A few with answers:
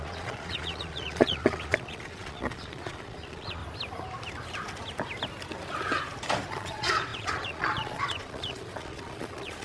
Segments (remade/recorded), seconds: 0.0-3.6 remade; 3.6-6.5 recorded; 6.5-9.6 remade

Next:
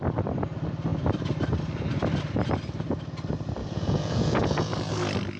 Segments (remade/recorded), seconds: 0.0-3.6 recorded; 3.6-4.9 remade; 4.9-5.4 recorded